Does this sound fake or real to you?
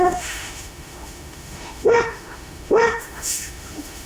fake